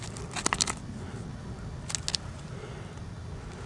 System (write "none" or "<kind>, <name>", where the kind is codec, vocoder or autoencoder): none